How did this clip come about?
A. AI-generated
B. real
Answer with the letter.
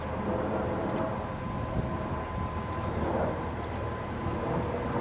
B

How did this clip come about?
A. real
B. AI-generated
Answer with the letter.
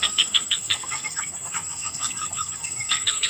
B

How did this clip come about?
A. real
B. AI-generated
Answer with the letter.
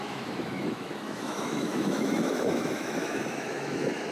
B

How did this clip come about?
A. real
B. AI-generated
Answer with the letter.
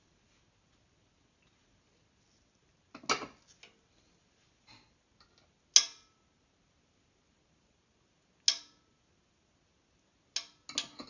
A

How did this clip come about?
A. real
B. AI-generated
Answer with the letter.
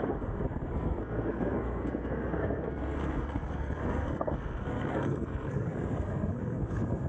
B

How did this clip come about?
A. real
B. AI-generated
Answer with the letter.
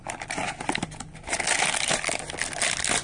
A